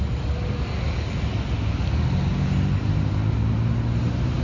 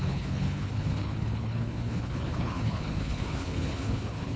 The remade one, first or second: second